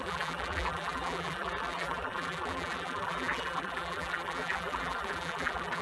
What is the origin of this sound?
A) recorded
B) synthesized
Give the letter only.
B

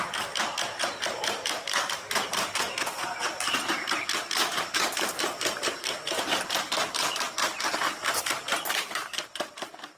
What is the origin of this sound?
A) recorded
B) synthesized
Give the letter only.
B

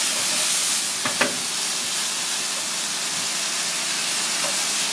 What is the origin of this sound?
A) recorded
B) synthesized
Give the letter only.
A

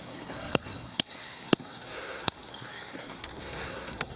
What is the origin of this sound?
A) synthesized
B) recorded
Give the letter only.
A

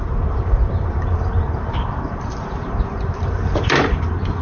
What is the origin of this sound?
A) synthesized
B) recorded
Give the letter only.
A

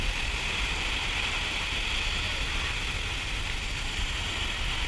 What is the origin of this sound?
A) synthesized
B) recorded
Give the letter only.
B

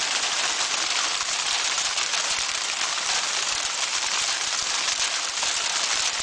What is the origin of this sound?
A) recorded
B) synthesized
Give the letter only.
A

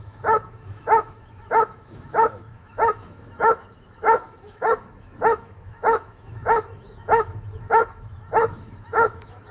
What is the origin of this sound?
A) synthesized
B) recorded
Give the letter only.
A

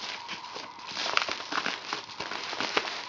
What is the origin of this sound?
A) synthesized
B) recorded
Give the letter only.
B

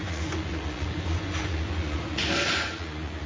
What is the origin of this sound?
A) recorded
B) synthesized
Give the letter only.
B